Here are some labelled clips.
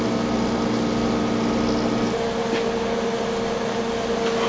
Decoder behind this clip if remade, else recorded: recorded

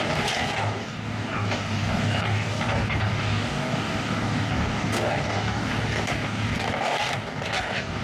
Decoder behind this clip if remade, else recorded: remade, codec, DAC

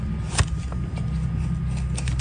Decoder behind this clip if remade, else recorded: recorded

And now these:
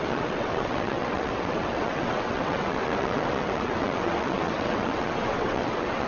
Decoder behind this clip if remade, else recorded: remade, vocoder, WaveNeXt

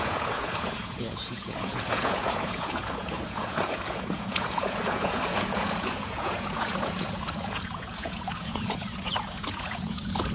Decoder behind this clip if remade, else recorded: remade, vocoder, Vocos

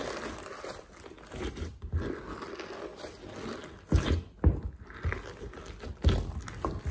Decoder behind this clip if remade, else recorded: recorded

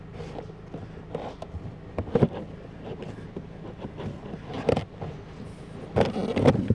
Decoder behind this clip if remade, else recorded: recorded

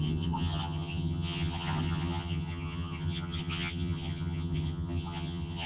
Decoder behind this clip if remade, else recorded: remade, vocoder, HiFi-GAN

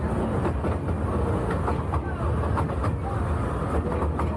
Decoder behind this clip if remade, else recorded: recorded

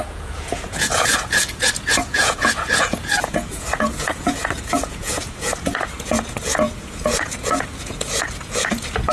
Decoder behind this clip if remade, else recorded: remade, vocoder, Vocos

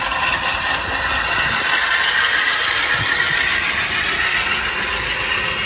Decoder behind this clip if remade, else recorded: recorded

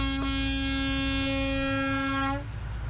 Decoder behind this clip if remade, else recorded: recorded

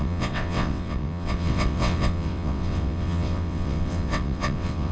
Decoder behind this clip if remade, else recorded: remade, vocoder, WaveNeXt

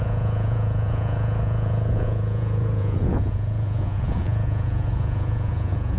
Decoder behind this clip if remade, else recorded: remade, vocoder, Vocos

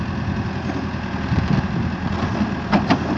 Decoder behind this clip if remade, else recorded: recorded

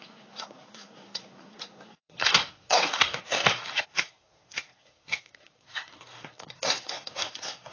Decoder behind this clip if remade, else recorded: remade, codec, SNAC